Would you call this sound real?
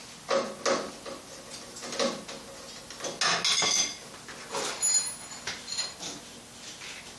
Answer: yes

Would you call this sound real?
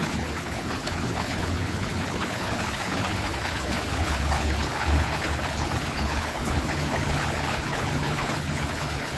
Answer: no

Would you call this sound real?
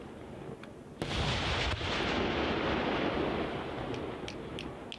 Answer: yes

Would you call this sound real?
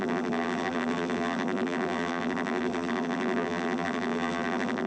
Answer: no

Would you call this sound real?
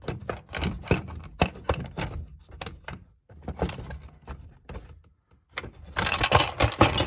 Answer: yes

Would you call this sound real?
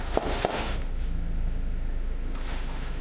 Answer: no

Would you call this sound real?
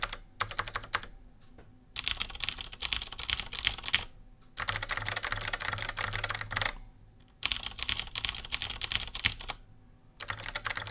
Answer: yes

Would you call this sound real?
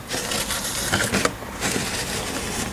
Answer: yes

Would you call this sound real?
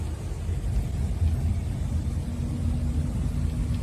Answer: yes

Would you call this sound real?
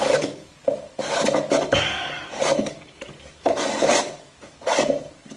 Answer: no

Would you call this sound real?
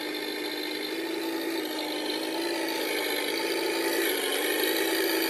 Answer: yes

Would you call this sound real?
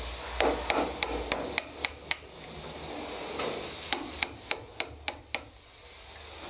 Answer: yes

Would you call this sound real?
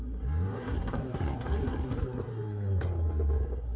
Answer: no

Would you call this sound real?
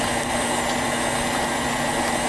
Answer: yes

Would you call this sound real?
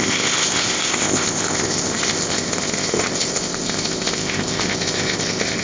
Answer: no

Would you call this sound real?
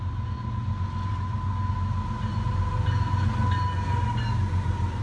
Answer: yes